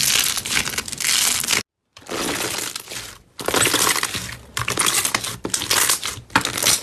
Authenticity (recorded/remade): recorded